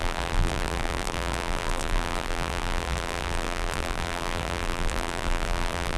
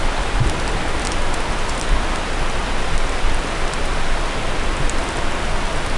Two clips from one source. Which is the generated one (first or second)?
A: first